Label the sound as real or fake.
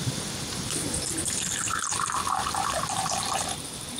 fake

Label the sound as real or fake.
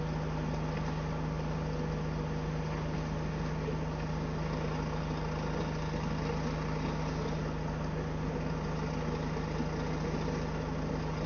real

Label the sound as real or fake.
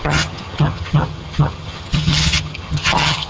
fake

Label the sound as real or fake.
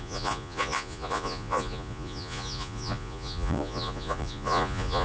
fake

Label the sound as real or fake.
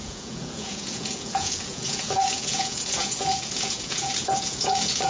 fake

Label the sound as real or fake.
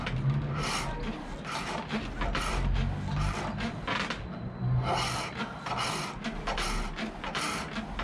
real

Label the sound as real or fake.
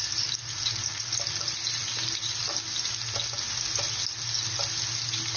real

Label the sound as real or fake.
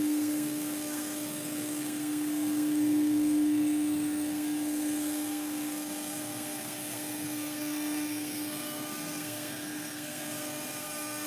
fake